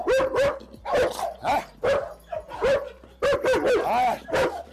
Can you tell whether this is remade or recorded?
recorded